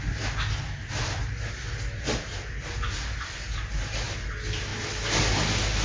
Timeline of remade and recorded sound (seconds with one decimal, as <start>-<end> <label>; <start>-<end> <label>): 0.0-5.8 recorded

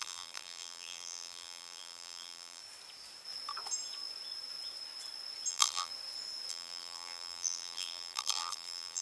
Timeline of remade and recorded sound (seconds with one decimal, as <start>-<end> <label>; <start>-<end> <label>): 0.0-2.6 remade; 2.6-5.5 recorded; 5.5-5.9 remade; 5.9-6.5 recorded; 6.5-9.0 remade

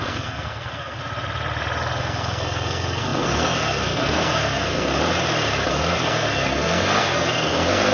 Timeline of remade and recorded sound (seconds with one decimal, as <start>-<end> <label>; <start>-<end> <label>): 0.0-1.0 remade; 1.0-2.0 recorded; 2.0-4.9 remade; 4.9-5.7 recorded; 5.7-7.9 remade

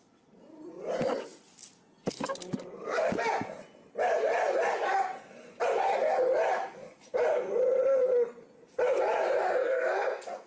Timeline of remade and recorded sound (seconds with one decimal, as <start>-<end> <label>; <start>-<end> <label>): 0.0-9.6 recorded; 9.6-10.5 remade

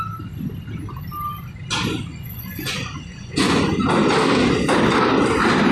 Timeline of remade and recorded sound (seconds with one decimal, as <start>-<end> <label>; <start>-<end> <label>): 0.0-2.1 recorded; 2.1-3.6 remade; 3.6-5.7 recorded